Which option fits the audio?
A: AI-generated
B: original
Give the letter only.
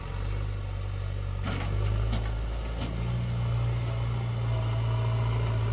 B